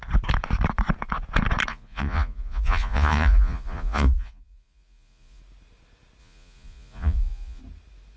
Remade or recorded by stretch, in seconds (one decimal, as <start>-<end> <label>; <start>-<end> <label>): 0.0-1.7 recorded; 1.7-5.4 remade; 5.4-6.2 recorded; 6.2-7.6 remade; 7.6-8.2 recorded